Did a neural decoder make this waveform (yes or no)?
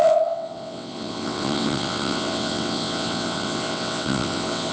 yes